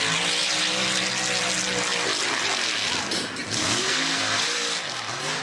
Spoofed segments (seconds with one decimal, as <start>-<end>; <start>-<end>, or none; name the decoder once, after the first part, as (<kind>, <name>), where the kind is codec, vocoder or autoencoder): 3.6-4.2 (codec, SNAC)